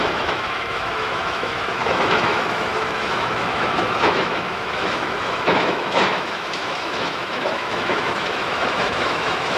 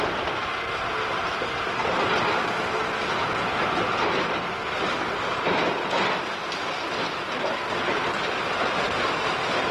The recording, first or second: second